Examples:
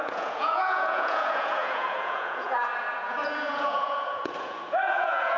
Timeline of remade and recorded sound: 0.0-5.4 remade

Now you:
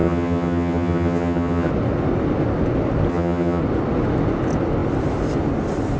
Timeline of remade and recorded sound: 0.0-1.7 remade; 1.7-3.1 recorded; 3.1-3.6 remade; 3.6-6.0 recorded

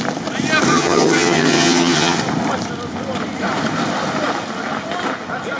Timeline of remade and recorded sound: 0.0-0.7 recorded; 0.7-2.2 remade; 2.2-5.6 recorded

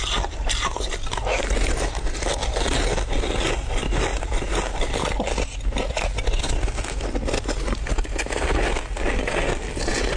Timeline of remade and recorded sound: 0.0-10.2 recorded